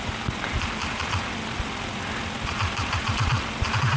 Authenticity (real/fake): real